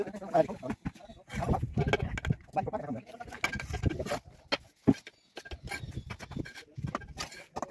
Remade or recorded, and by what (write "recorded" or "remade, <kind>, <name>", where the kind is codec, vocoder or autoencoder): recorded